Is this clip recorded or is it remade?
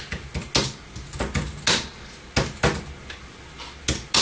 recorded